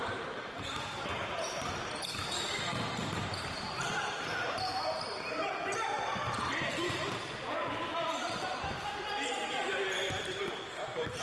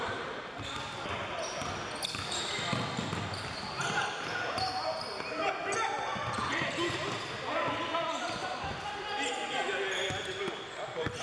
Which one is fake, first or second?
first